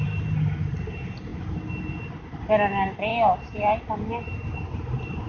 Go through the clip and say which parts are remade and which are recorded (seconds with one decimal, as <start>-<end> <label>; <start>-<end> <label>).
0.0-1.3 remade; 1.3-1.8 recorded; 1.8-5.3 remade